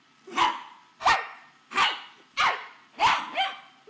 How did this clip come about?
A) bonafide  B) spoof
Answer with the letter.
A